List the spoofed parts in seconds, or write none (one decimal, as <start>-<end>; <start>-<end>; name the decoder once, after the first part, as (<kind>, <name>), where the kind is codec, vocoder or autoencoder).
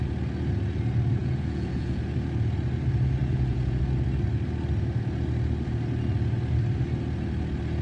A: 1.2-2.0 (vocoder, Vocos); 3.2-3.8